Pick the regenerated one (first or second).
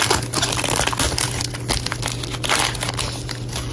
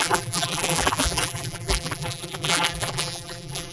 second